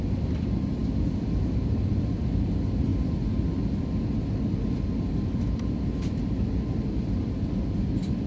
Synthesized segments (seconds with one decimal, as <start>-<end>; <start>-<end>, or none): none